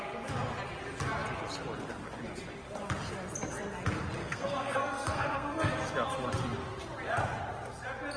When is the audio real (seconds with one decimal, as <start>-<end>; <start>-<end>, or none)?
0.0-4.2; 5.7-8.2